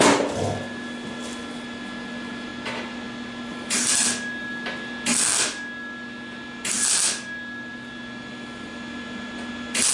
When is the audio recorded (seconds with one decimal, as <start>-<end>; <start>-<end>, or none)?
0.0-9.9